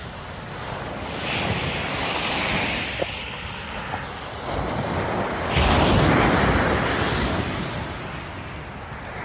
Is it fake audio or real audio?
real